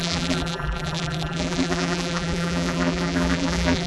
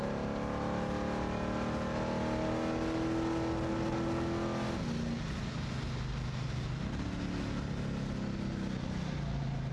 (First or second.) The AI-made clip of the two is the first